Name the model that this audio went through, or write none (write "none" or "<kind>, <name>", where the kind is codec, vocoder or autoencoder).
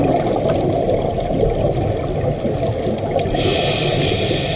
none